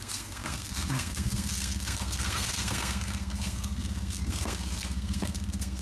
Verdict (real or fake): fake